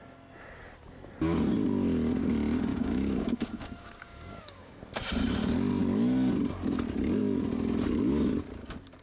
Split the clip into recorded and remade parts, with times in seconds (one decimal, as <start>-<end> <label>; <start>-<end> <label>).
0.0-2.7 recorded; 2.7-4.8 remade; 4.8-9.0 recorded